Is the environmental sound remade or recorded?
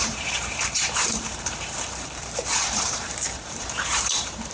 remade